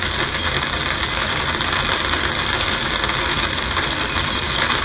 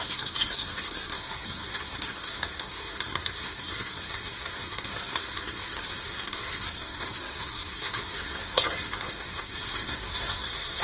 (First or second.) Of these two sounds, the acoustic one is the first